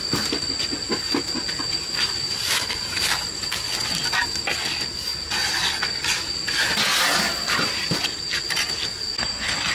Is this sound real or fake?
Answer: real